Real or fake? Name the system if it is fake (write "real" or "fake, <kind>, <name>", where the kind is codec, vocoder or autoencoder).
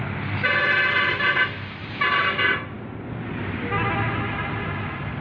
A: real